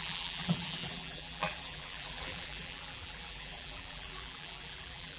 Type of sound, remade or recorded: remade